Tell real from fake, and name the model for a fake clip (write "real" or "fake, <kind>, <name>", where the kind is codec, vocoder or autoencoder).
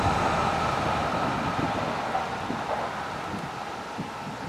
real